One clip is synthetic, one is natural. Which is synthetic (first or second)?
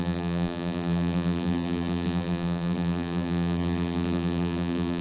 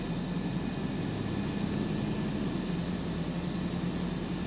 first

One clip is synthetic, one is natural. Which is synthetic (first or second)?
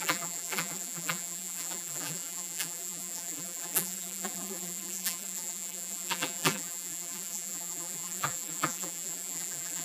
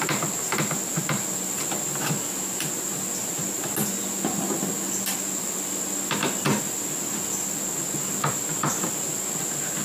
first